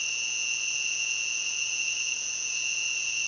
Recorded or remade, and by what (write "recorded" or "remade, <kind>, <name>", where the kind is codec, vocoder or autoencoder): remade, vocoder, Vocos